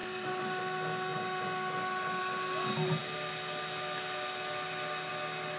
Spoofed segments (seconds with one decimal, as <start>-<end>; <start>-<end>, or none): 0.0-0.6